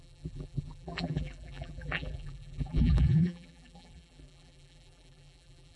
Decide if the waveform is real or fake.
fake